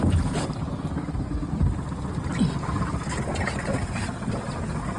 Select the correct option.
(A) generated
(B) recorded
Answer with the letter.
B